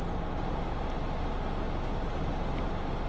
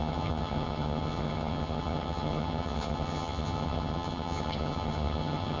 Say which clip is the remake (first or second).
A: second